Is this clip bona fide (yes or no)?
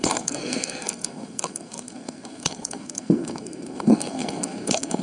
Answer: no